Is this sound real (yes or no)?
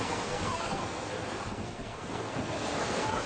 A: no